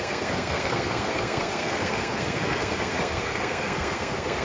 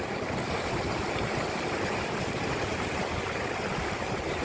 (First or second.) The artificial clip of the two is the first